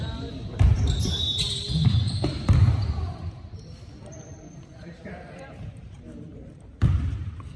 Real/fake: fake